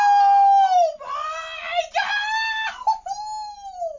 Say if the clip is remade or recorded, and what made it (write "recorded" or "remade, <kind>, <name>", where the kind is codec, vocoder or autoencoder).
recorded